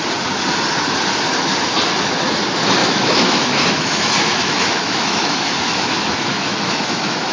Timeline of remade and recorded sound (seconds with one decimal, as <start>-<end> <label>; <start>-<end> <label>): 0.0-2.8 recorded; 2.8-7.3 remade